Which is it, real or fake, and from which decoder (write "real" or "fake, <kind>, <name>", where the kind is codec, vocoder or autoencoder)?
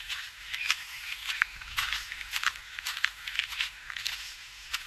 fake, autoencoder, DAC-VAE